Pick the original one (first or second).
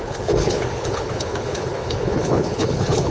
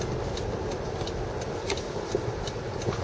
second